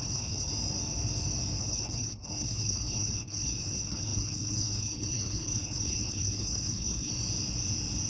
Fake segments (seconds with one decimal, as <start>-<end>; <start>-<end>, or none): 0.0-0.5; 1.6-7.1